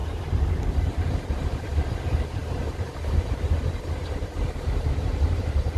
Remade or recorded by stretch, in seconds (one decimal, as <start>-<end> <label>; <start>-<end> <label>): 0.0-0.7 recorded; 0.7-5.8 remade